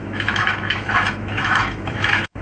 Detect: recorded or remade remade